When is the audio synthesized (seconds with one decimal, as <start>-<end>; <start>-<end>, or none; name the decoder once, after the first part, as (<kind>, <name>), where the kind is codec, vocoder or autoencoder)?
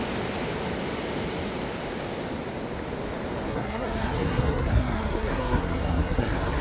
3.5-6.6 (codec, SNAC)